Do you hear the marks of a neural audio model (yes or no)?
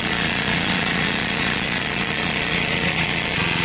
yes